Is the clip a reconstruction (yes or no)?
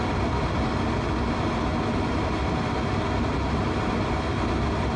no